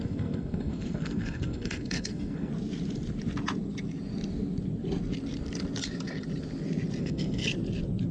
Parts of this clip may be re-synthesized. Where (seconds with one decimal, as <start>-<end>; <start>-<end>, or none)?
0.0-2.5; 7.0-7.4